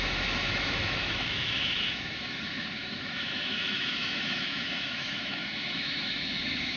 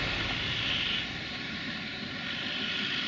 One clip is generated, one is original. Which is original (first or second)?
second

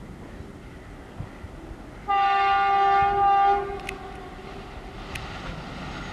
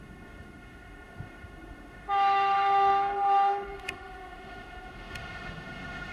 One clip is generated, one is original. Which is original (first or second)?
first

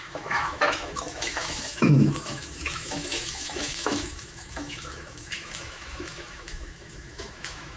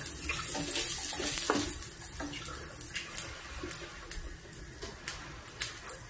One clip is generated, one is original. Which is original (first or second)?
second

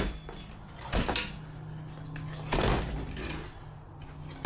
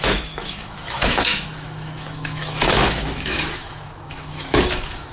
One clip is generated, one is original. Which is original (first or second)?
first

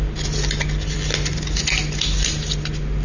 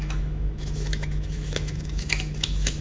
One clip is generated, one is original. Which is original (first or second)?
first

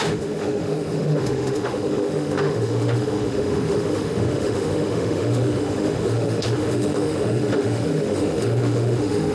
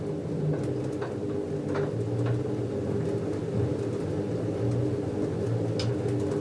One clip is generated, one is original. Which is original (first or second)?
second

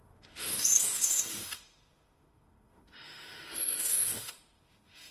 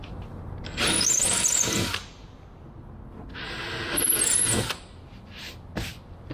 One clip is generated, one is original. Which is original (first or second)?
second